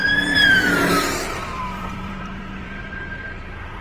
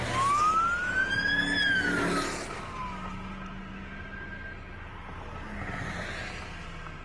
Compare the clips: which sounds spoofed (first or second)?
first